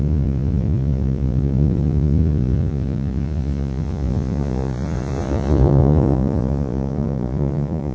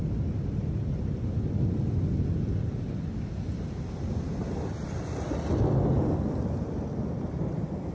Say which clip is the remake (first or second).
first